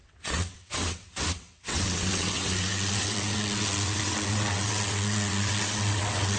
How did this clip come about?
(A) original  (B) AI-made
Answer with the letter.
B